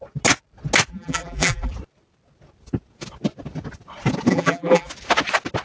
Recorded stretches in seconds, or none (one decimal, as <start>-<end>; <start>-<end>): 0.0-0.9; 1.7-4.3; 4.9-5.6